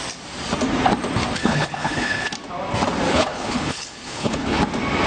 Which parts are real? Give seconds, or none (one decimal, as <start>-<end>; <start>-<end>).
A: 0.0-1.4; 2.3-3.1; 4.6-5.1